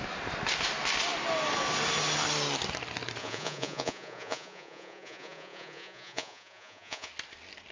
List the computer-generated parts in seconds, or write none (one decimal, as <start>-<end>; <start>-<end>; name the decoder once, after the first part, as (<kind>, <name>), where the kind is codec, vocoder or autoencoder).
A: 3.2-7.1 (vocoder, Vocos)